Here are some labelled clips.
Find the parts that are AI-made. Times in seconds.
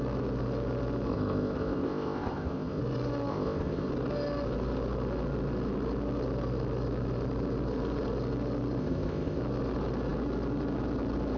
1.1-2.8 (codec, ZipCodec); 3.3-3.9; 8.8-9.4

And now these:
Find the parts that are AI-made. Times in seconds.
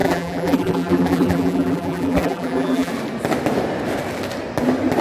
0.0-2.9 (vocoder, BigVGAN v2)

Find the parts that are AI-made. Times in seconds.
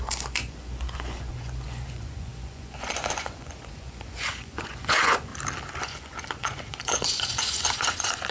0.0-5.3 (vocoder, Vocos); 5.8-8.3